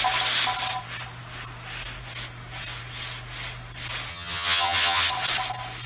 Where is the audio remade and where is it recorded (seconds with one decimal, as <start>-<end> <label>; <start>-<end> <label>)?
0.0-4.1 recorded; 4.1-5.1 remade; 5.1-5.9 recorded